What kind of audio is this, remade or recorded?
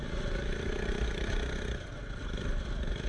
recorded